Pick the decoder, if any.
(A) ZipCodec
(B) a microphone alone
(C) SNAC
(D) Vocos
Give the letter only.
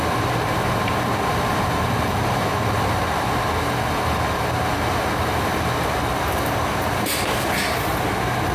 B